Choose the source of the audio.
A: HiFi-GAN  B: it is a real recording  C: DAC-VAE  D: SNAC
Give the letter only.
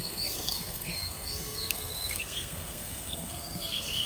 D